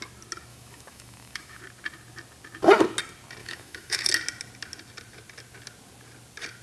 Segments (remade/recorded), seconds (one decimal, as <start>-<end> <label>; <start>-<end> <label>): 0.0-0.5 recorded; 0.5-1.6 remade; 1.6-3.4 recorded; 3.4-4.1 remade; 4.1-6.6 recorded